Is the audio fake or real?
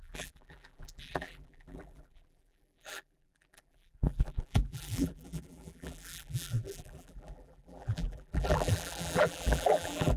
fake